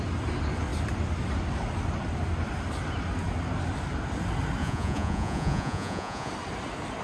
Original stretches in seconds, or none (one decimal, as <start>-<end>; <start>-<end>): 0.0-4.6; 6.3-7.0